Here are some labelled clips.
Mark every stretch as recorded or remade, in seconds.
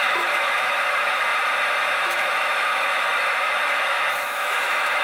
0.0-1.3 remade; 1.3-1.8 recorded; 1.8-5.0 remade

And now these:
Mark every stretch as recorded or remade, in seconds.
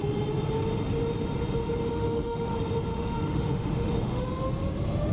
0.0-1.9 recorded; 1.9-2.5 remade; 2.5-2.9 recorded; 2.9-4.2 remade; 4.2-5.1 recorded